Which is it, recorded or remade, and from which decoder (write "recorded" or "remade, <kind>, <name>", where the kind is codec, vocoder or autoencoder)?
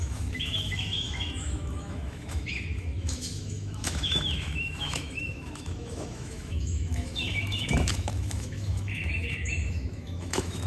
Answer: remade, autoencoder, DAC-VAE